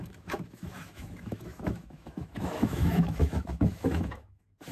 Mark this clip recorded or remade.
remade